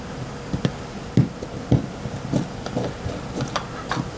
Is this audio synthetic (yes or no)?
no